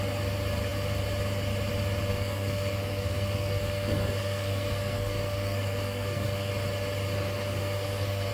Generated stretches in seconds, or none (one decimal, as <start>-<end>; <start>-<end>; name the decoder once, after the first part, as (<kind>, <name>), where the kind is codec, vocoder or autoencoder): 2.1-6.5 (codec, SNAC); 7.6-8.3